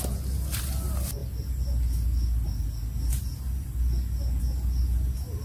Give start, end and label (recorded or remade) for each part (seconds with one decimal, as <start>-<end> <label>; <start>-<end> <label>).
0.0-5.4 recorded